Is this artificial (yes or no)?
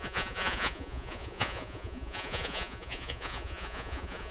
yes